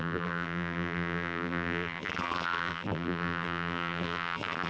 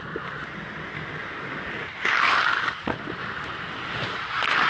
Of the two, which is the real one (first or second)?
second